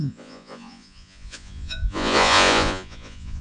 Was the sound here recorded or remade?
remade